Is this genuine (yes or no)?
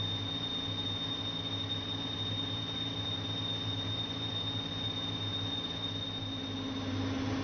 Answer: yes